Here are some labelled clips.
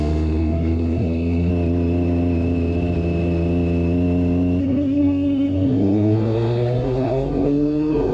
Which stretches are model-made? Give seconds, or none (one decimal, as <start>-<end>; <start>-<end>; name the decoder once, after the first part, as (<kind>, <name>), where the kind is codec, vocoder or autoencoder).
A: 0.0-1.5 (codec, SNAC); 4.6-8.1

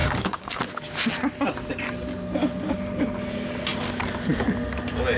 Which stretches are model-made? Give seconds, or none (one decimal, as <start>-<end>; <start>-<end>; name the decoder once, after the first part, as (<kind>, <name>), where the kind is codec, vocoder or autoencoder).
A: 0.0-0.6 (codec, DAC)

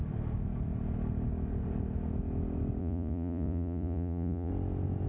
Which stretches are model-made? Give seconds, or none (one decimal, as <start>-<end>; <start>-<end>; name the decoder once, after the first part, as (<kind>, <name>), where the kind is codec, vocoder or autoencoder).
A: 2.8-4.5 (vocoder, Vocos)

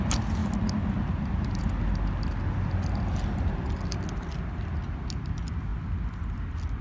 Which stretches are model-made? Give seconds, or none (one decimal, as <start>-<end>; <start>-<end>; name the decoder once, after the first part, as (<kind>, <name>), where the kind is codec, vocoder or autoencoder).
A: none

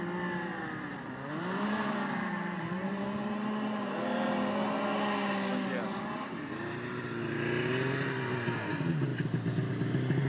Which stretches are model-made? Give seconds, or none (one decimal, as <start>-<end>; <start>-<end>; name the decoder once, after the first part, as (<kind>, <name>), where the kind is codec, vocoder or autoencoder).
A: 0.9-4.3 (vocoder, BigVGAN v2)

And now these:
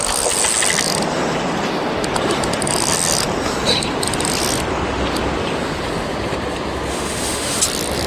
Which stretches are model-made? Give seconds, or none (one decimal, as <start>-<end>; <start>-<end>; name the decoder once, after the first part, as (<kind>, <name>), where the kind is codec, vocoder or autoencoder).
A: 6.9-7.6 (autoencoder, DAC-VAE)